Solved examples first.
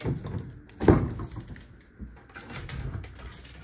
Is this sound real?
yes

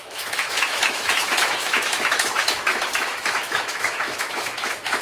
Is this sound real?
no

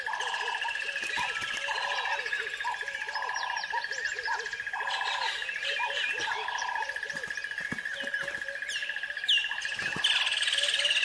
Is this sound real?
yes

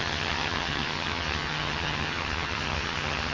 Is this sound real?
no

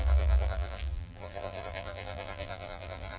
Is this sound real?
no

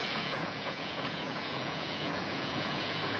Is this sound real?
no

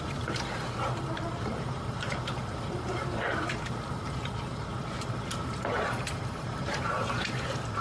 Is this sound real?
no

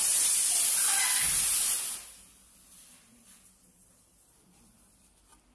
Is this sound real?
yes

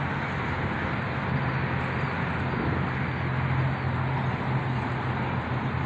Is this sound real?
yes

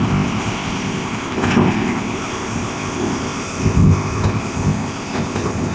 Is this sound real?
no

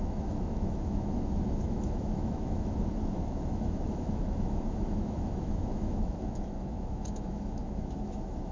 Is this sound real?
no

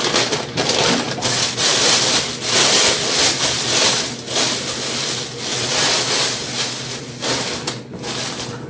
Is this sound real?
yes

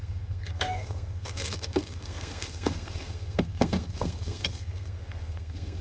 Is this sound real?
no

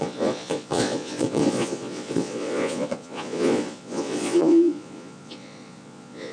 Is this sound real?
no